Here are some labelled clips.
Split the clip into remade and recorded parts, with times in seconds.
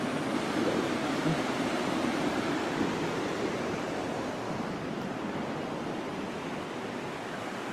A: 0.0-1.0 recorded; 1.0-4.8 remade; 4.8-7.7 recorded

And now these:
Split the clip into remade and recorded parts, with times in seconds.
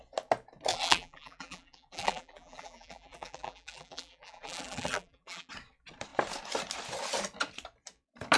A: 0.0-0.7 recorded; 0.7-5.5 remade; 5.5-8.4 recorded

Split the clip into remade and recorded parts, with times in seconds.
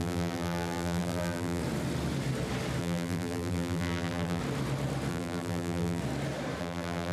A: 0.0-1.6 remade; 1.6-2.8 recorded; 2.8-4.4 remade; 4.4-5.1 recorded; 5.1-6.0 remade; 6.0-6.6 recorded; 6.6-7.1 remade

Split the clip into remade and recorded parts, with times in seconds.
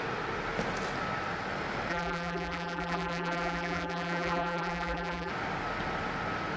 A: 0.0-1.9 recorded; 1.9-5.3 remade; 5.3-6.6 recorded